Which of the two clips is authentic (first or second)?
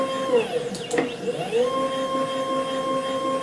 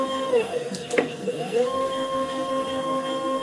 first